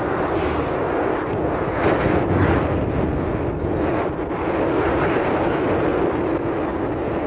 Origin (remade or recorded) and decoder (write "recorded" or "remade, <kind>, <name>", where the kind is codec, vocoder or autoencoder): recorded